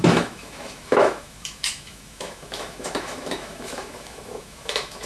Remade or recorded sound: remade